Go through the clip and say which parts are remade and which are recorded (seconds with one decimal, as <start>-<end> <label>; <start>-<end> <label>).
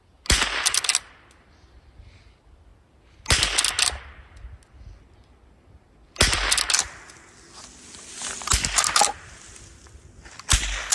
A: 0.0-10.9 recorded